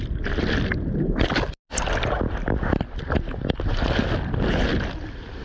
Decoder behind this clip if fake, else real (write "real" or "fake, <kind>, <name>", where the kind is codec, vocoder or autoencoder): real